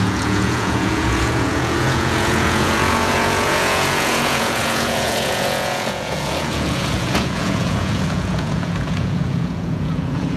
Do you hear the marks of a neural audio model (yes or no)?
yes